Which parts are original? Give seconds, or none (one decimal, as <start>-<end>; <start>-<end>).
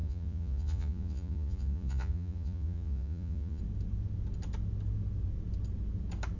3.6-6.4